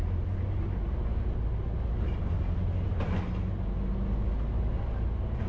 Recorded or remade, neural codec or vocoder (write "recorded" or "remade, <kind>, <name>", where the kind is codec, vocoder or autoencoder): recorded